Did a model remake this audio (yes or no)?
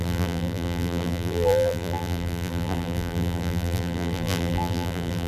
yes